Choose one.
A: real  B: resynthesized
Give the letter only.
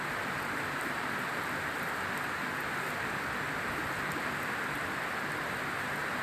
A